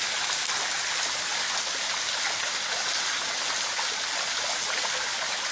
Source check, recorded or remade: recorded